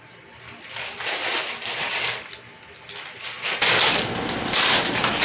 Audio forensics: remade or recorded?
recorded